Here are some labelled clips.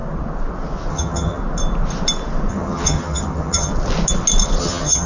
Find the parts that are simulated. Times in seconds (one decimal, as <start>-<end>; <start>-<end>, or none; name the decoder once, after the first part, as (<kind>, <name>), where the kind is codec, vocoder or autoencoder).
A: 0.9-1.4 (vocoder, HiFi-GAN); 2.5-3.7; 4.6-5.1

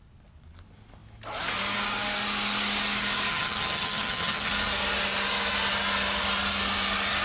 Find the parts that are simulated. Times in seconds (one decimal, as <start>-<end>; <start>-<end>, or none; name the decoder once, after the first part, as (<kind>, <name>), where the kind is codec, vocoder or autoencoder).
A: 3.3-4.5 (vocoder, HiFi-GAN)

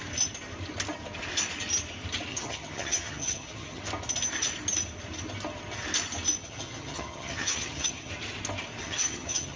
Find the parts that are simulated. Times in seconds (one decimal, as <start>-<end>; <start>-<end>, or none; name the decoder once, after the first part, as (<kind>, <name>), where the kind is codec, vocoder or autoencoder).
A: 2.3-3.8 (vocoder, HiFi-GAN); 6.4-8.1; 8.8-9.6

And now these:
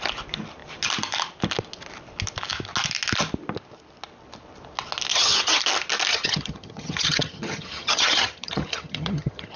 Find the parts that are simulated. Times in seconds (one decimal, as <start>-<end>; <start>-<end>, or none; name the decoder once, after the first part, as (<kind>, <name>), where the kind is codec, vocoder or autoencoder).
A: 5.1-5.6 (vocoder, HiFi-GAN); 6.1-9.6

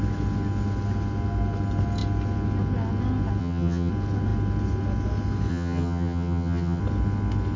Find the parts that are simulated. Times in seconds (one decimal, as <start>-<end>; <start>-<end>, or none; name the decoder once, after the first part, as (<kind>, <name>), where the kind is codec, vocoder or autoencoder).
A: 3.4-3.9 (vocoder, HiFi-GAN); 5.5-6.8

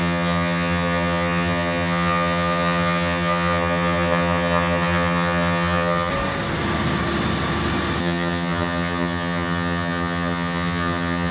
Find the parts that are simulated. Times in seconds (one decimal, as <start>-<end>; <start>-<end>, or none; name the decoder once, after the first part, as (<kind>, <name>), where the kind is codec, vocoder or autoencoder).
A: 0.0-6.1 (vocoder, HiFi-GAN); 8.0-11.3